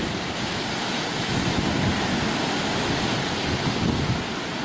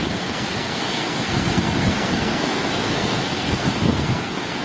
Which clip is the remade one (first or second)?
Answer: second